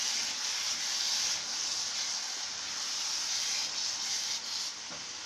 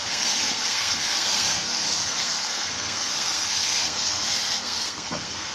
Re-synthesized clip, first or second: second